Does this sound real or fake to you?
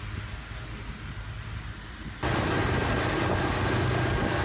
real